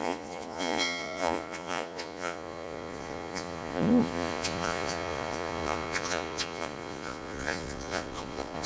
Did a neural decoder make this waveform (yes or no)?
yes